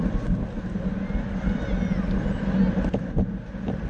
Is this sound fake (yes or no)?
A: no